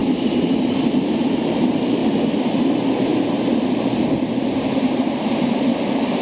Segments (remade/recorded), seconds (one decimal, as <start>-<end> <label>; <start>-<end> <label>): 0.0-2.0 remade; 2.0-2.6 recorded; 2.6-3.1 remade; 3.1-3.7 recorded; 3.7-6.2 remade